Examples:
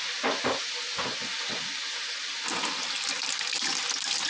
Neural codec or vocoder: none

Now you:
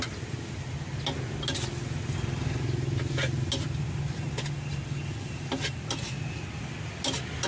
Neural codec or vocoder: none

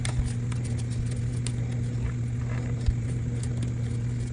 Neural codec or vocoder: none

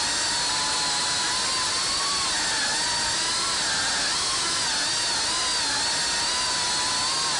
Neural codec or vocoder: none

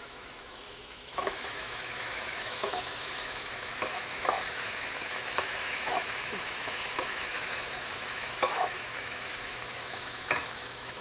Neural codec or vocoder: autoencoder, DAC-VAE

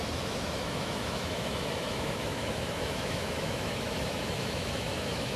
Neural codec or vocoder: autoencoder, DAC-VAE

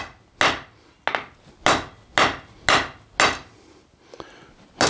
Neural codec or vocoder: none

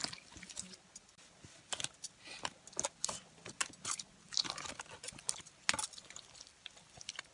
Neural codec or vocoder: none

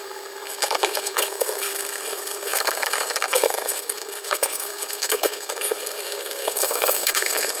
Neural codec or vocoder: codec, SNAC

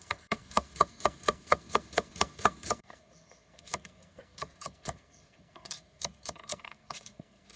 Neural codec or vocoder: codec, SNAC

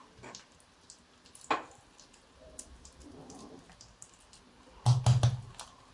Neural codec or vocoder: none